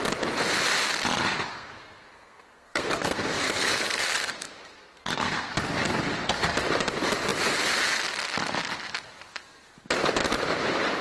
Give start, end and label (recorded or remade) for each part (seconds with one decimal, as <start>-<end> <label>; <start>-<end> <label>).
0.0-1.5 recorded; 1.5-5.5 remade; 5.5-11.0 recorded